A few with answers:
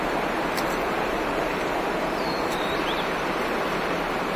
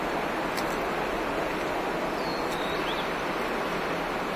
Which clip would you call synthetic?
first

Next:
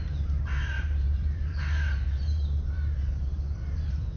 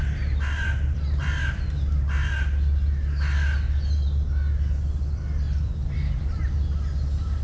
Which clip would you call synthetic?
first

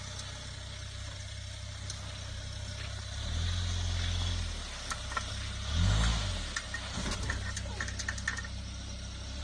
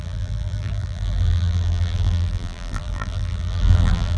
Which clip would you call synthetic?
second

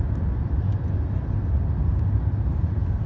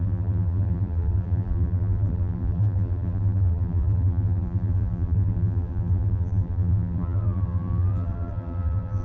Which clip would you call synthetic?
second